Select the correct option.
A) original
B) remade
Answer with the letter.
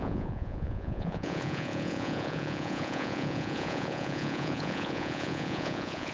B